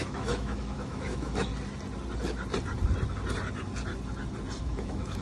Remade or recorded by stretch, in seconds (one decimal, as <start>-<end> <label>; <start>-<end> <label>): 0.0-1.5 remade; 1.5-4.6 recorded; 4.6-5.2 remade